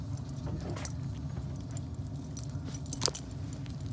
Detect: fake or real real